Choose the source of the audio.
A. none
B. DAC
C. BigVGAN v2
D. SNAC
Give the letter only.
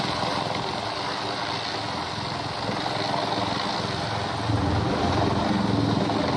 A